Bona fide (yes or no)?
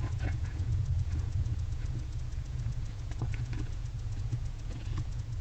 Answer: no